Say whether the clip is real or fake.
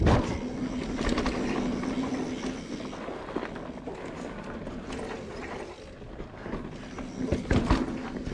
real